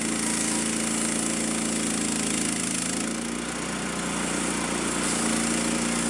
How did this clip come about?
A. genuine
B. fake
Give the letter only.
A